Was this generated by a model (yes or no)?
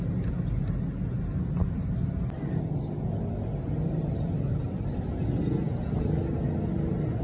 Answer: no